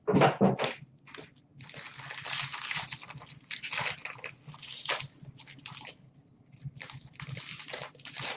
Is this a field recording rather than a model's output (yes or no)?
yes